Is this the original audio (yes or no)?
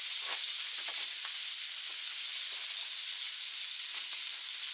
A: yes